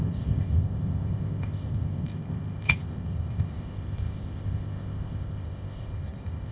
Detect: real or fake fake